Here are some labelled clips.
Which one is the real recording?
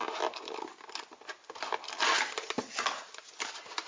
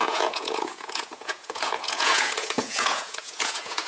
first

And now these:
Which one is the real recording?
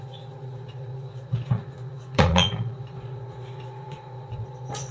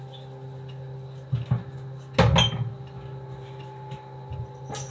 second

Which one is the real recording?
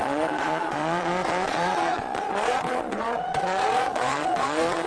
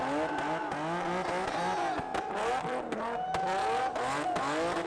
second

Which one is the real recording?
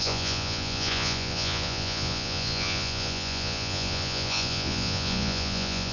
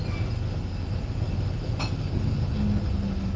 second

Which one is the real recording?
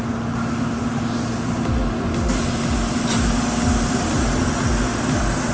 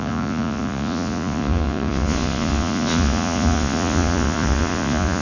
first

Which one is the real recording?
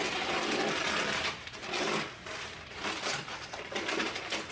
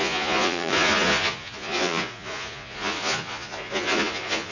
first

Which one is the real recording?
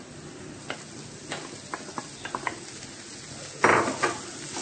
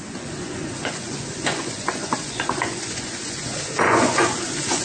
first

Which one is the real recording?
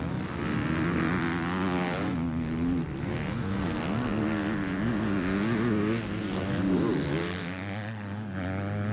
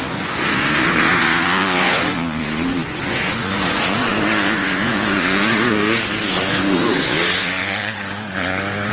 first